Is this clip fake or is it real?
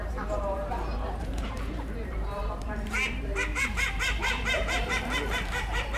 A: fake